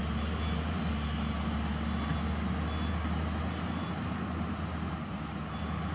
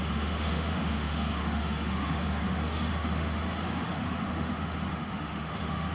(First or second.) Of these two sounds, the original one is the first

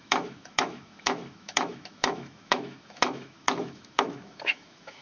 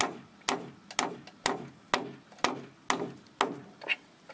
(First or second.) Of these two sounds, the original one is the second